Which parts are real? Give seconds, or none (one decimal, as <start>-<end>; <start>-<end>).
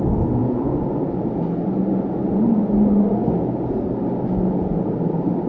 0.0-5.5